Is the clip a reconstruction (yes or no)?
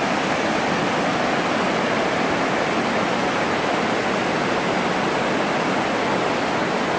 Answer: no